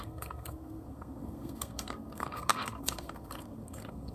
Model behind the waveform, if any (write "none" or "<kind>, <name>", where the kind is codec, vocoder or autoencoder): codec, SNAC